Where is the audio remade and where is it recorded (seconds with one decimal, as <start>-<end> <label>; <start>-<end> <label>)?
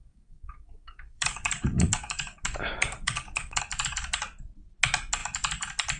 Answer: 0.0-3.6 remade; 3.6-6.0 recorded